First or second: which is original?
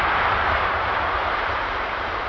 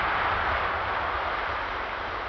second